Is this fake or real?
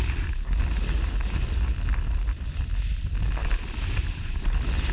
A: real